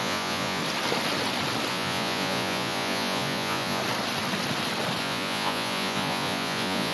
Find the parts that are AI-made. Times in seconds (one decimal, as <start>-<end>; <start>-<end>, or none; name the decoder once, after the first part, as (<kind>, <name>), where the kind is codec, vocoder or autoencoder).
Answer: 0.0-0.6 (vocoder, Vocos); 1.7-3.8; 5.0-6.9